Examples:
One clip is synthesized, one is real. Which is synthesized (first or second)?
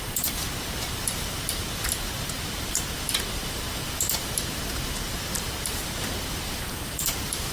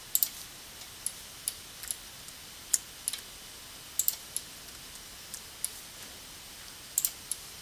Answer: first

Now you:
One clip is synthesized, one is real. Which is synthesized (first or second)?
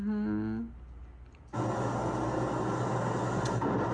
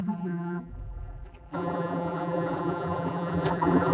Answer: second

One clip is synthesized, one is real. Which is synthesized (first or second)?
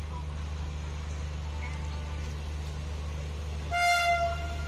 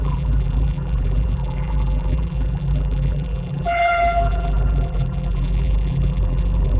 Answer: second